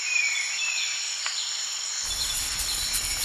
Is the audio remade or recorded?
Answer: recorded